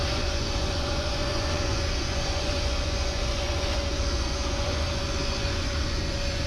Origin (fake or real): fake